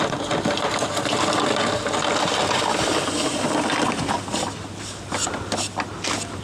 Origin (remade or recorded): recorded